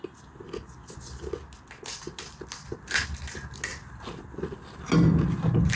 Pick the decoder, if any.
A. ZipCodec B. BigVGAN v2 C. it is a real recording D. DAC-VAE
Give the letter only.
C